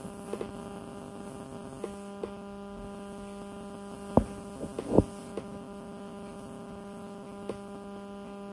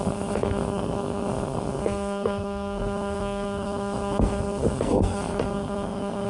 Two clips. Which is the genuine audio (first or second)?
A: first